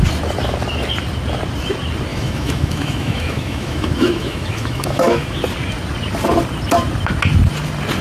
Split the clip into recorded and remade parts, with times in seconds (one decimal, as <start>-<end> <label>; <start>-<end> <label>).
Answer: 0.0-2.1 recorded; 2.1-5.4 remade; 5.4-8.0 recorded